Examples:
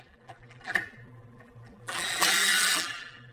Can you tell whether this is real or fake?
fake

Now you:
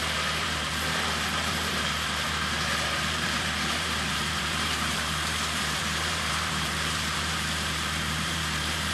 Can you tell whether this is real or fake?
fake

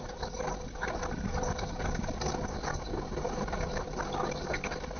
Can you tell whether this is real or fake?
real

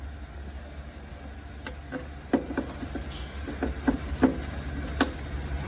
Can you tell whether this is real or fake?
real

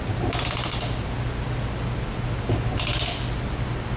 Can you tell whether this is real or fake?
real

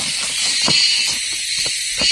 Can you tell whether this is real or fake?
fake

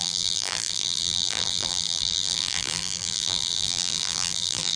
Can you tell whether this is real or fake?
fake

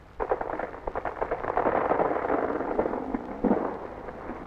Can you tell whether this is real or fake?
real